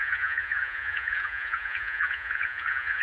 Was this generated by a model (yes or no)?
yes